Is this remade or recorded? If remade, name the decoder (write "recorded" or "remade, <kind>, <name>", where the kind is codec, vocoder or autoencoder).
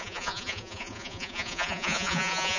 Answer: remade, vocoder, Vocos